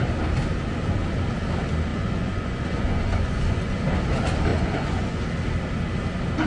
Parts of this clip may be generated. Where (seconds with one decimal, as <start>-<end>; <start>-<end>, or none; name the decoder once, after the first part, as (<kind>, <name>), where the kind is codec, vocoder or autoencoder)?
1.9-3.8 (vocoder, Vocos); 4.5-5.2